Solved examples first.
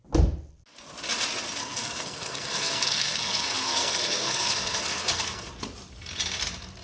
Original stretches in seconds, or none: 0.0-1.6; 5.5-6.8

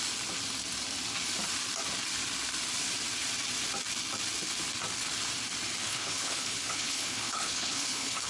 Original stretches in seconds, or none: 0.0-5.8

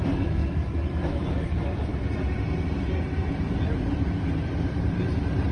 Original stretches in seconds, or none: 0.4-1.3; 1.9-3.9